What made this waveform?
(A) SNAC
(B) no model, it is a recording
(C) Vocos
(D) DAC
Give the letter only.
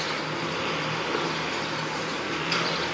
B